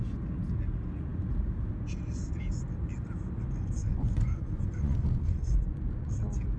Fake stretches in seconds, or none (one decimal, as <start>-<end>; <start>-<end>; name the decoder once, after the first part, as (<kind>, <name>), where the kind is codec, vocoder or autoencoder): 3.8-6.1 (vocoder, Vocos)